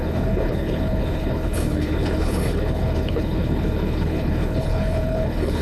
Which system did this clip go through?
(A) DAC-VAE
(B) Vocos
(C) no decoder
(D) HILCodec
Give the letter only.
D